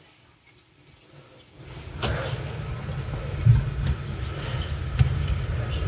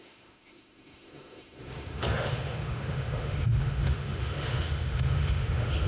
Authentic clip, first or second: first